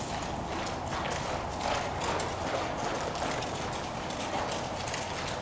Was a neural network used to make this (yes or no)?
no